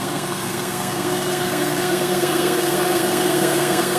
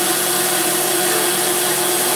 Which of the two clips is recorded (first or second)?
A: second